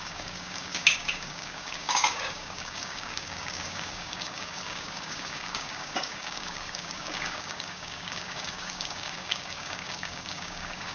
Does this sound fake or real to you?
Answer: fake